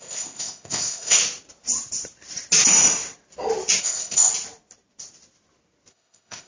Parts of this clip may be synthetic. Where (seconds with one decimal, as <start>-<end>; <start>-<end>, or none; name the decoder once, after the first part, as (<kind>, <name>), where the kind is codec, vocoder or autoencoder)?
0.0-1.2 (codec, ZipCodec); 3.8-4.3; 5.9-6.5